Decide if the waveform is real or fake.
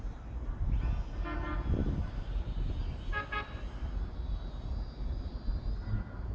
real